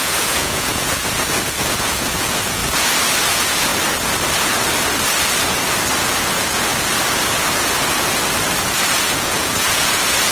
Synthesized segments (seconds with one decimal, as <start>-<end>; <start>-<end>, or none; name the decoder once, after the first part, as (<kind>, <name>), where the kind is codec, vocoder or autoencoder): 0.0-2.6 (vocoder, Vocos); 3.3-3.7; 6.2-6.7; 8.9-10.3